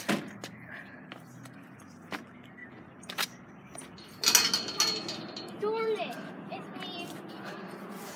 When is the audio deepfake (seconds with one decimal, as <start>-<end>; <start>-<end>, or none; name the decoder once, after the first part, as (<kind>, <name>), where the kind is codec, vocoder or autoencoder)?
2.6-3.8 (vocoder, BigVGAN v2)